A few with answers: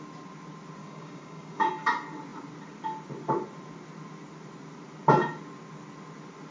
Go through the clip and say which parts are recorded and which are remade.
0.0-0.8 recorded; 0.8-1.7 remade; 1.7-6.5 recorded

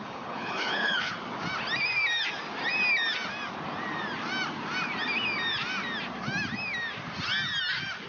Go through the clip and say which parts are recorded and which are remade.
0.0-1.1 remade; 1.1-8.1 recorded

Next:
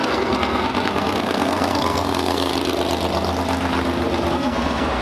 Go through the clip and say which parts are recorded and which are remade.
0.0-2.5 remade; 2.5-4.3 recorded; 4.3-5.0 remade